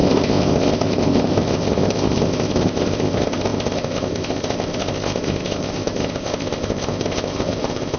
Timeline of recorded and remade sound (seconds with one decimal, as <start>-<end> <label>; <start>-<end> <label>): 0.0-8.0 remade